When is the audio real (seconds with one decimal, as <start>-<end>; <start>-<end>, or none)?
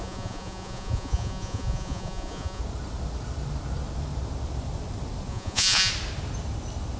2.6-5.3; 5.9-7.0